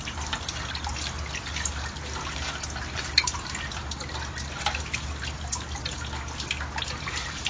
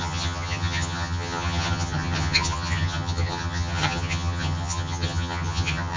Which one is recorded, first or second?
first